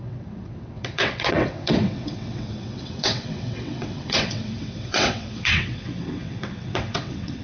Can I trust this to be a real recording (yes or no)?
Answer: no